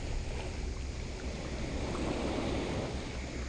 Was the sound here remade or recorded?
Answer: recorded